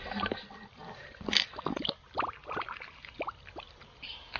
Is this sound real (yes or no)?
yes